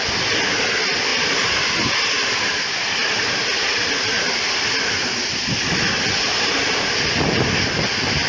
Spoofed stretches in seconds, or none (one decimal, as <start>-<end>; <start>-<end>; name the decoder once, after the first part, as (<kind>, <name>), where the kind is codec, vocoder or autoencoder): none